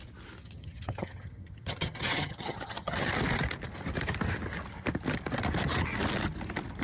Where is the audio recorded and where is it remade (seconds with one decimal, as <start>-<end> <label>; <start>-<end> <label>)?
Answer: 0.0-0.4 recorded; 0.4-3.1 remade; 3.1-6.8 recorded